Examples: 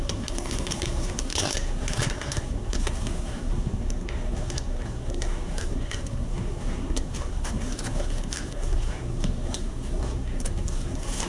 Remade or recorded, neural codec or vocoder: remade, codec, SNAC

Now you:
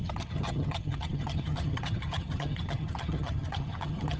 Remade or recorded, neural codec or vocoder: remade, vocoder, HiFi-GAN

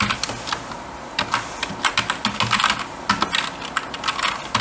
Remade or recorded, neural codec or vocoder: recorded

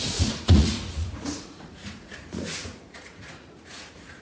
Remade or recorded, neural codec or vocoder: remade, vocoder, Vocos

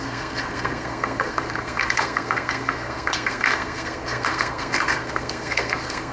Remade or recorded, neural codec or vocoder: remade, codec, SNAC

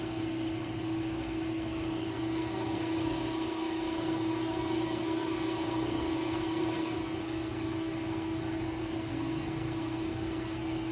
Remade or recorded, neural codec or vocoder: remade, codec, SNAC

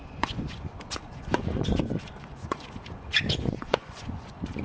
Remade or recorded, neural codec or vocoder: remade, vocoder, Vocos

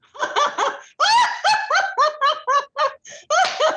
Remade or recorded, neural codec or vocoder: recorded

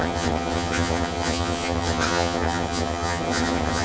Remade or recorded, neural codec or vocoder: remade, vocoder, HiFi-GAN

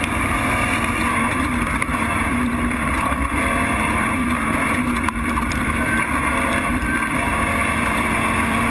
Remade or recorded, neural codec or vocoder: remade, vocoder, BigVGAN v2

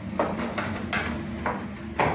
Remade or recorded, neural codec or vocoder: recorded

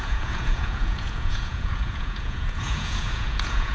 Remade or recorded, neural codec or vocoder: remade, vocoder, Vocos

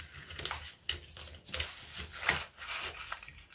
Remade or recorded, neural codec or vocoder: recorded